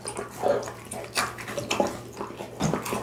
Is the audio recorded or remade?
recorded